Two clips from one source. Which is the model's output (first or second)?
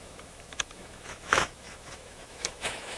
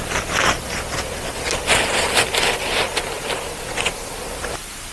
first